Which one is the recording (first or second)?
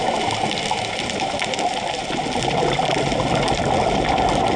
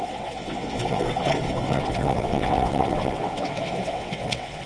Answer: first